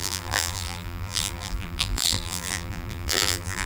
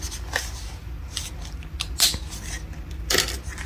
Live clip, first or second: second